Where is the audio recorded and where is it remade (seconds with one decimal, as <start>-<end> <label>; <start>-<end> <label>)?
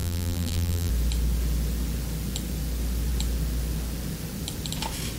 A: 0.0-0.9 remade; 0.9-5.2 recorded